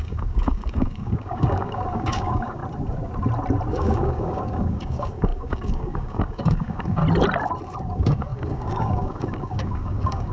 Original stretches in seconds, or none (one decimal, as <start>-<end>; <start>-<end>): 2.6-3.7; 7.0-7.8